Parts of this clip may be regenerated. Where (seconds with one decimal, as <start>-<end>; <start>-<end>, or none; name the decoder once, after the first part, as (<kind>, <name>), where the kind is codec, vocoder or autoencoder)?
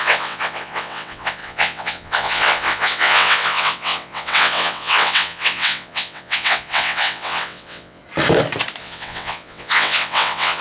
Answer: 0.0-8.0 (vocoder, WaveNeXt); 8.8-10.6